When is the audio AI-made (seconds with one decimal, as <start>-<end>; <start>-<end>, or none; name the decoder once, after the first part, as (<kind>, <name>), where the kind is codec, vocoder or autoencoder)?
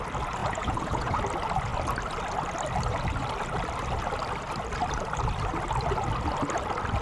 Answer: 0.4-1.2 (vocoder, Vocos)